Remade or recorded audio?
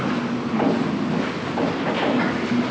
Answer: recorded